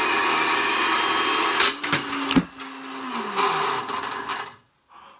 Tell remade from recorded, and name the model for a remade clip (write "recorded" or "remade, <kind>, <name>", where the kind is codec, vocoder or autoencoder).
recorded